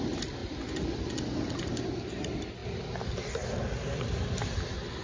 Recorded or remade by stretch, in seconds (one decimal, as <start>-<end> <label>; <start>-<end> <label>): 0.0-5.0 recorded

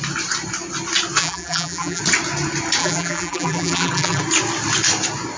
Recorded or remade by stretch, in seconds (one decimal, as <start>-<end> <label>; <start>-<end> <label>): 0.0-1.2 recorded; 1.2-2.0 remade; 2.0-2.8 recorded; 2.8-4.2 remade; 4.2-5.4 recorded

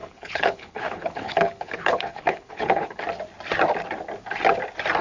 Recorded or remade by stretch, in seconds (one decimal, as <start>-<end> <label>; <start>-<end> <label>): 0.0-3.0 remade; 3.0-5.0 recorded

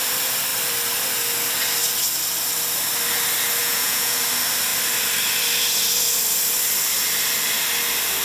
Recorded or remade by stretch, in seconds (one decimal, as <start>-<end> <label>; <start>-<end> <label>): 0.0-3.6 recorded; 3.6-4.2 remade; 4.2-8.2 recorded